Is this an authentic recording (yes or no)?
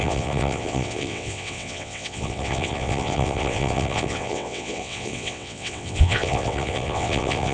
no